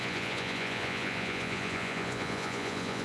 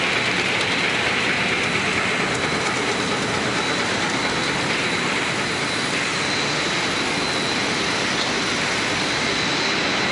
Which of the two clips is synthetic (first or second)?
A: first